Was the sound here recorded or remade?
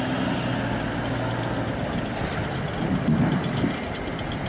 recorded